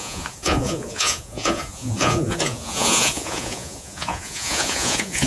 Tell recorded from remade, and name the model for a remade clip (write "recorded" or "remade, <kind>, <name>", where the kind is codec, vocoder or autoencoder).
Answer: remade, vocoder, Vocos